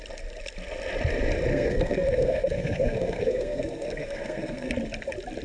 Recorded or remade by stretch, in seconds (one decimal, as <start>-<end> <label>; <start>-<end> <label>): 0.0-1.5 recorded; 1.5-4.7 remade; 4.7-5.4 recorded